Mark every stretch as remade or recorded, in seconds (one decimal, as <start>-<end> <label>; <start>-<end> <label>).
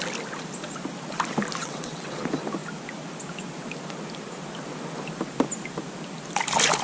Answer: 0.0-1.6 recorded; 1.6-2.2 remade; 2.2-6.8 recorded